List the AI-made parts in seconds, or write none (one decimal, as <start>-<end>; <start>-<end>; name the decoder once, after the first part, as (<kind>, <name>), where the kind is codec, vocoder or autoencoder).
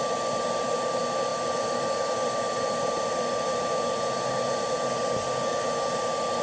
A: none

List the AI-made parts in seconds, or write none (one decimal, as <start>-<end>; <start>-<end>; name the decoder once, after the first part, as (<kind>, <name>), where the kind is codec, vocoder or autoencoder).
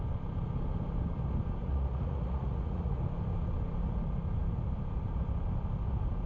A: 1.6-3.0 (vocoder, Vocos)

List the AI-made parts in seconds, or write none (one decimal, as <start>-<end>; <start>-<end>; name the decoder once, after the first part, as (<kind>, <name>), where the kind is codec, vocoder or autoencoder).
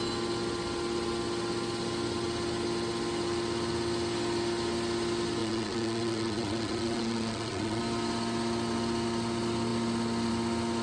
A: 5.4-7.8 (vocoder, Vocos)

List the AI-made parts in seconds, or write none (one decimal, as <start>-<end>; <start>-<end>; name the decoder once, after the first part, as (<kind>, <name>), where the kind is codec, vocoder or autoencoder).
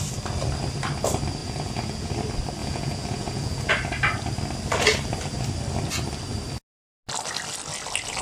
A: 1.4-2.1 (vocoder, Vocos); 2.6-3.7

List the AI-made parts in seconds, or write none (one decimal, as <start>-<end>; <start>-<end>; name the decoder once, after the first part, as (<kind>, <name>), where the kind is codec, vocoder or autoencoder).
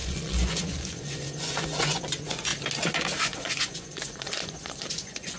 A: 0.0-2.5 (vocoder, Vocos); 3.2-5.4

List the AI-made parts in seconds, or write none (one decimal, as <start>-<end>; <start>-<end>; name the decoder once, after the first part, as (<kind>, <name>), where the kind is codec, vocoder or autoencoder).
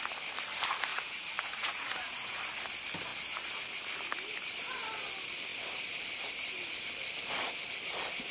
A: 0.9-2.4 (vocoder, Vocos)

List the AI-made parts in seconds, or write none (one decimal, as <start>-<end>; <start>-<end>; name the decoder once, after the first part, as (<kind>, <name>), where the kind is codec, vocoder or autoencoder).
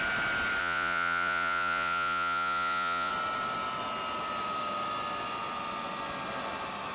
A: 0.6-3.1 (vocoder, Vocos)